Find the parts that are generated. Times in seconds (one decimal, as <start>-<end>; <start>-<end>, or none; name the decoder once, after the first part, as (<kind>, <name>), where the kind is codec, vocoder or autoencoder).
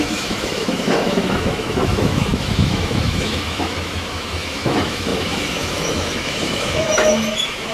0.0-7.7 (autoencoder, DAC-VAE)